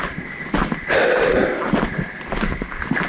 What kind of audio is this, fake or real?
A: real